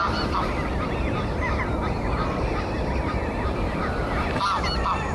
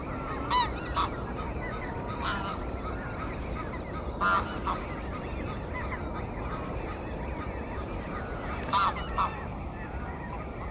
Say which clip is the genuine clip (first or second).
second